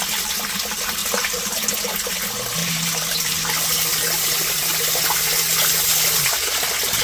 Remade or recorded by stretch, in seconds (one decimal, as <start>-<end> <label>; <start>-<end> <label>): 0.0-1.0 recorded; 1.0-1.7 remade; 1.7-2.6 recorded; 2.6-3.3 remade; 3.3-3.9 recorded; 3.9-4.7 remade; 4.7-7.0 recorded